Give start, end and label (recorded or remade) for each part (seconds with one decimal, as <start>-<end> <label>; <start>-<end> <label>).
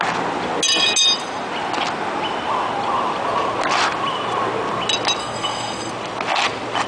0.0-5.2 recorded; 5.2-5.9 remade; 5.9-6.9 recorded